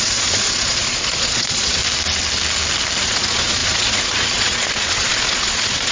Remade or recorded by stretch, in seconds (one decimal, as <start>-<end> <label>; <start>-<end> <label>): 0.0-1.8 remade; 1.8-3.0 recorded; 3.0-5.9 remade